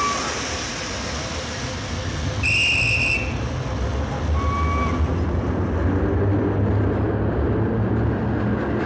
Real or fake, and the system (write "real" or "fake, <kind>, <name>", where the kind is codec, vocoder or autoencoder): real